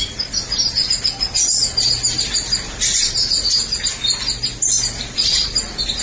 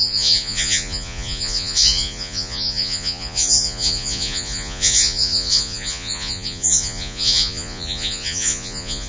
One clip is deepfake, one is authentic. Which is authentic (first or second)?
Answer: first